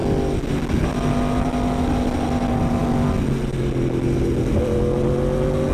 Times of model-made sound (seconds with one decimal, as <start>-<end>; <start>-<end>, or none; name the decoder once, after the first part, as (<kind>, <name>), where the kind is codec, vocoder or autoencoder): none